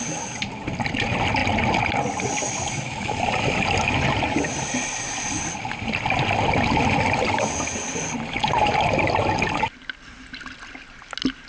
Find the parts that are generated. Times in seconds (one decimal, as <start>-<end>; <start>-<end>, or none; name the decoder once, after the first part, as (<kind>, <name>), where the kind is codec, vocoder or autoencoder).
none